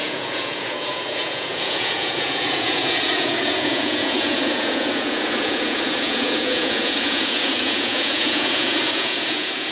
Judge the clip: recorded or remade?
remade